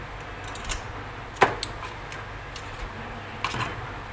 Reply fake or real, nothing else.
real